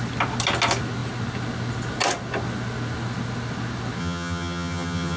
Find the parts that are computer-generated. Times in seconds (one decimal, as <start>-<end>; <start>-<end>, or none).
4.0-5.2